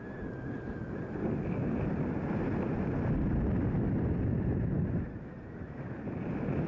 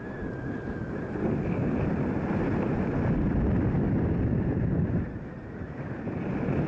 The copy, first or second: second